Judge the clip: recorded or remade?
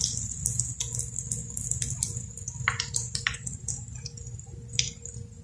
recorded